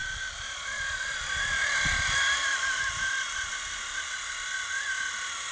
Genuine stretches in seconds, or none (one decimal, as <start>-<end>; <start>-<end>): 0.0-5.5